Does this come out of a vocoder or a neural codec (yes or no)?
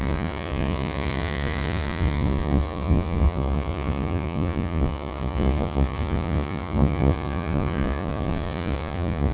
yes